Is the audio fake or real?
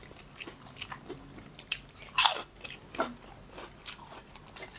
real